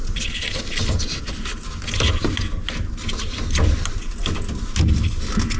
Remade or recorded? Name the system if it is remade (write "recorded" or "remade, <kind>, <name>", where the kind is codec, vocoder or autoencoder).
recorded